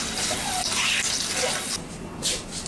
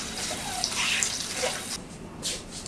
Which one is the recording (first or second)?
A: first